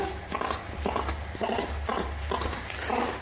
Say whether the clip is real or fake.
real